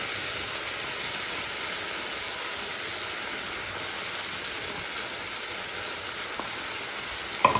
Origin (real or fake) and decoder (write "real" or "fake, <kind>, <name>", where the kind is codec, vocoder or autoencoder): real